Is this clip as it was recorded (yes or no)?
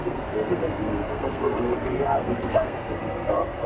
no